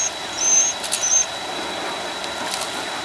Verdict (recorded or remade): recorded